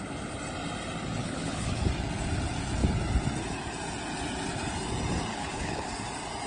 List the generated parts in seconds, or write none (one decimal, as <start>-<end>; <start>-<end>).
1.2-1.8; 5.3-5.9